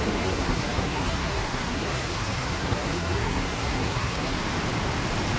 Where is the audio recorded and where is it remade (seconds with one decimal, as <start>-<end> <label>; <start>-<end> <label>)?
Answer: 0.0-4.4 remade; 4.4-5.4 recorded